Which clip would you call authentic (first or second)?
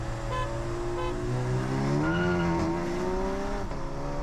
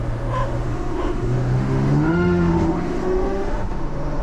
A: first